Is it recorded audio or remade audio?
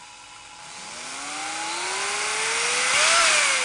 recorded